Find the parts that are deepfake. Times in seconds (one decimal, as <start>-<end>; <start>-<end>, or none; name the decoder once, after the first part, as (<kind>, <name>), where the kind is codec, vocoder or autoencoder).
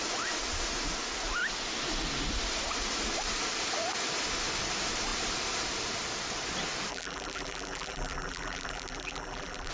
6.9-9.7 (vocoder, BigVGAN v2)